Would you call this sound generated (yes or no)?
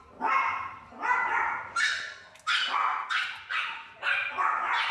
no